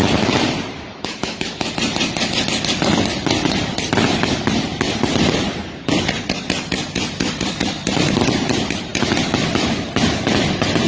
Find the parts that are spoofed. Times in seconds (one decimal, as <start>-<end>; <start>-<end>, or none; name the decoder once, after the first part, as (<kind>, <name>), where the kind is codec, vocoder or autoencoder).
0.9-1.7 (autoencoder, DAC-VAE)